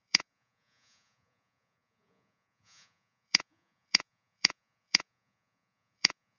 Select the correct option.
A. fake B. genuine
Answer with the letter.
A